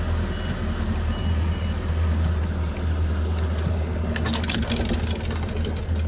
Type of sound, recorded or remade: recorded